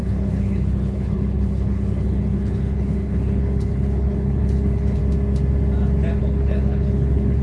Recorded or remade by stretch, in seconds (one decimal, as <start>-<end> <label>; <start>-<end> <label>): 0.0-5.0 remade; 5.0-6.2 recorded; 6.2-7.4 remade